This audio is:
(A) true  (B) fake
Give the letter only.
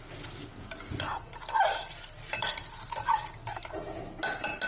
A